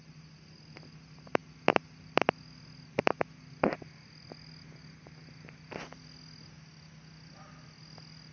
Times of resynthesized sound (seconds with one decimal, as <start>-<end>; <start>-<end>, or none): none